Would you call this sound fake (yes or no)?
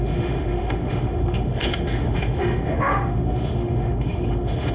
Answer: yes